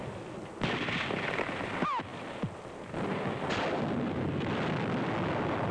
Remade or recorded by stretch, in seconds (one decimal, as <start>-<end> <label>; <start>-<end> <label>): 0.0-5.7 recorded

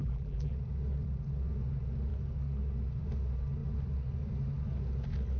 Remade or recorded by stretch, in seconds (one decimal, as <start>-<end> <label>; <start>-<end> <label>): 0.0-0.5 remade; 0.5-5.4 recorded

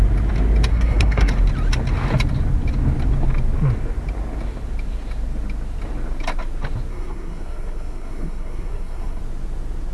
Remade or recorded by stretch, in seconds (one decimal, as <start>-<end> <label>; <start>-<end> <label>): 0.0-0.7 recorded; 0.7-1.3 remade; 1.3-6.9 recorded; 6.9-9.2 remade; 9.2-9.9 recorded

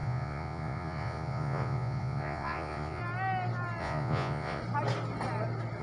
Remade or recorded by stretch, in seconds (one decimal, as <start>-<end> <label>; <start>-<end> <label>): 0.0-3.0 remade; 3.0-3.8 recorded; 3.8-4.6 remade; 4.6-5.8 recorded

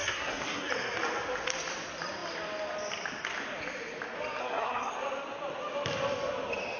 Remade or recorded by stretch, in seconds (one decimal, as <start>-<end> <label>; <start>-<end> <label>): 0.0-0.7 remade; 0.7-4.4 recorded; 4.4-4.9 remade; 4.9-6.8 recorded